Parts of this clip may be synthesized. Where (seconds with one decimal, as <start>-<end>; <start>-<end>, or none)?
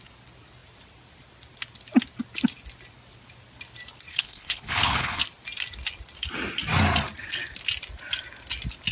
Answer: 4.1-5.2